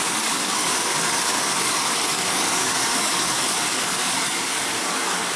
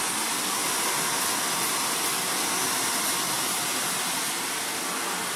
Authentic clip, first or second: second